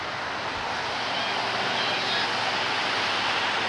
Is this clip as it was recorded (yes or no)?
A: yes